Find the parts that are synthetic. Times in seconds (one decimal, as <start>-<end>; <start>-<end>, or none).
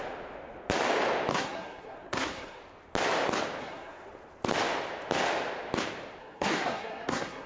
1.3-2.6; 3.6-4.1; 6.2-7.5